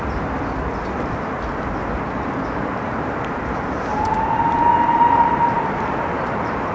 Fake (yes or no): no